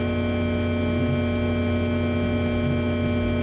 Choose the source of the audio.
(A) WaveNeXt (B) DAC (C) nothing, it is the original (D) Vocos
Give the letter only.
C